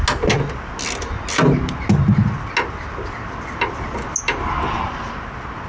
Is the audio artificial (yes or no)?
no